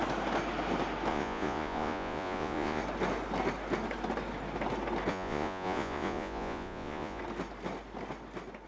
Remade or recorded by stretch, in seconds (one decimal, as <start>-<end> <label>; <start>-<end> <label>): 0.0-1.1 recorded; 1.1-2.8 remade; 2.8-5.1 recorded; 5.1-7.2 remade; 7.2-8.7 recorded